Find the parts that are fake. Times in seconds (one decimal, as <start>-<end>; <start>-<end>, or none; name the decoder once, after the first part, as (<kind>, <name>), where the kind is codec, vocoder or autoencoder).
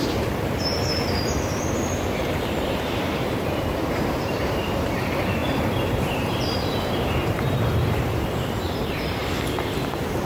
0.0-9.2 (vocoder, BigVGAN v2); 9.9-10.3